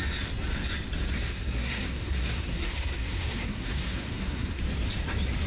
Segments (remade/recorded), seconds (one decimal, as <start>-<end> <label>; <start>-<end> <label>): 0.0-1.3 recorded; 1.3-4.6 remade; 4.6-5.5 recorded